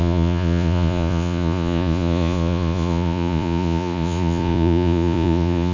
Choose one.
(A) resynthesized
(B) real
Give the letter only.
A